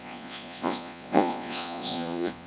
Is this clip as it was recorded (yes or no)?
no